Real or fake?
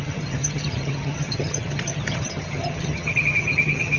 fake